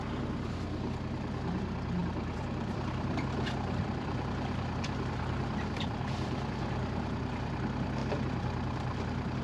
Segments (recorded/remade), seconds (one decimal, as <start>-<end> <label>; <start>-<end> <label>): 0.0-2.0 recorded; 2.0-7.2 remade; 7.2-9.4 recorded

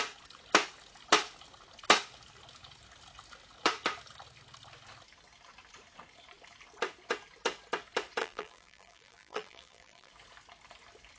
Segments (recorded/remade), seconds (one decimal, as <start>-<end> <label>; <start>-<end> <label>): 0.0-8.2 recorded; 8.2-10.1 remade; 10.1-11.2 recorded

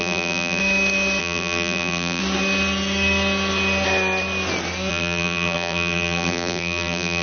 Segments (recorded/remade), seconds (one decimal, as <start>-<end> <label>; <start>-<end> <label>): 0.0-0.6 remade; 0.6-1.2 recorded; 1.2-2.2 remade; 2.2-4.9 recorded; 4.9-7.2 remade

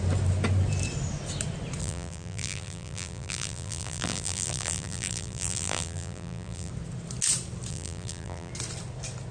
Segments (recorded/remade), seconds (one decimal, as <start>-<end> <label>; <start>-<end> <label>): 0.0-1.8 recorded; 1.8-6.7 remade; 6.7-7.7 recorded; 7.7-8.5 remade; 8.5-9.3 recorded

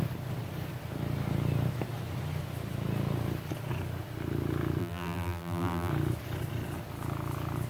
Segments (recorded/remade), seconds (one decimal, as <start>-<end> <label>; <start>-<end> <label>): 0.0-4.8 recorded; 4.8-5.9 remade; 5.9-7.7 recorded

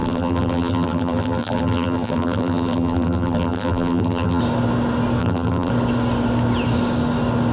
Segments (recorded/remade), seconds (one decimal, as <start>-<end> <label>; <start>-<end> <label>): 0.0-4.4 remade; 4.4-5.2 recorded; 5.2-5.7 remade; 5.7-7.5 recorded

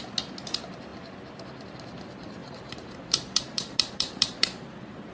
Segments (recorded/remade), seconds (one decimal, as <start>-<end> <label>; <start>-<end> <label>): 0.0-2.4 recorded; 2.4-5.1 remade

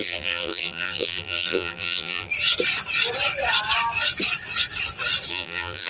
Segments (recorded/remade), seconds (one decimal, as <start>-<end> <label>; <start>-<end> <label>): 0.0-2.3 remade; 2.3-5.3 recorded; 5.3-5.9 remade